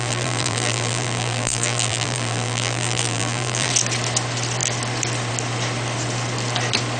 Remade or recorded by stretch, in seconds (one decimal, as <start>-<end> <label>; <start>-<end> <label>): 0.0-3.7 remade; 3.7-7.0 recorded